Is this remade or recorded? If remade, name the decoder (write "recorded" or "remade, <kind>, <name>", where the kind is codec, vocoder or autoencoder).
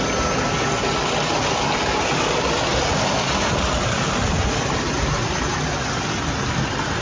recorded